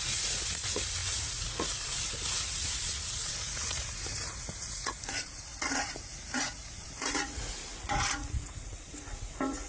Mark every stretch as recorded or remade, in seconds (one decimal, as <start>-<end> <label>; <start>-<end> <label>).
0.0-9.7 remade